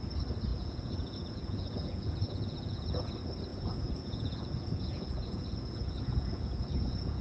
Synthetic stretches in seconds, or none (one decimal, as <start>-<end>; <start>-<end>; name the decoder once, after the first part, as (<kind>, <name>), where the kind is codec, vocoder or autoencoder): 0.5-3.1 (vocoder, Vocos); 3.5-7.2